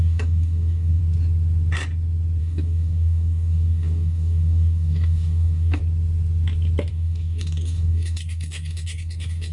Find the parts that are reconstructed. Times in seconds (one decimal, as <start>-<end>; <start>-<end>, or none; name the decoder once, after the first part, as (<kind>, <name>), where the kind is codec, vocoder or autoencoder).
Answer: 0.0-1.0 (codec, DAC); 2.4-5.8; 6.9-9.5